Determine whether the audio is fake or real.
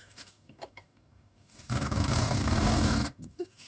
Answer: fake